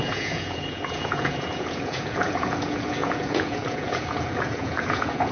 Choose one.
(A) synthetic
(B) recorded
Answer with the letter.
A